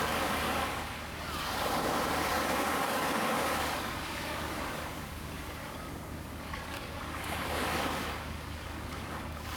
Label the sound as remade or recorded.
remade